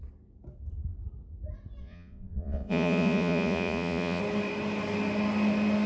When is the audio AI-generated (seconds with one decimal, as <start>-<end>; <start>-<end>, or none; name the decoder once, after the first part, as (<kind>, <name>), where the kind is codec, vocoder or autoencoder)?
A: 1.8-4.2 (vocoder, Vocos)